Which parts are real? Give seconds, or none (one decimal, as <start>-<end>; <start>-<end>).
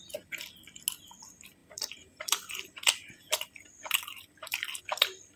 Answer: 0.0-1.6; 4.8-5.4